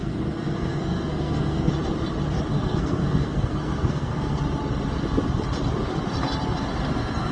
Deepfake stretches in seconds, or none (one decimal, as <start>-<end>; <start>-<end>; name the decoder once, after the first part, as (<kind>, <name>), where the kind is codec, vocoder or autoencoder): 0.0-1.7 (codec, SNAC); 2.5-4.4